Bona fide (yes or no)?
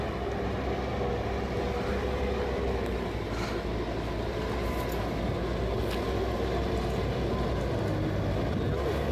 yes